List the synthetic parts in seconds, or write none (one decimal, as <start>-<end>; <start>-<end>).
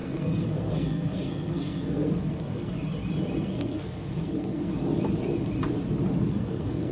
0.0-2.8; 3.4-4.7; 6.3-6.9